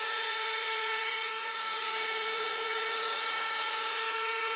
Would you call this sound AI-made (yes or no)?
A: yes